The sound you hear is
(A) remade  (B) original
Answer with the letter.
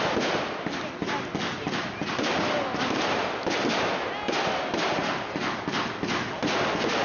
B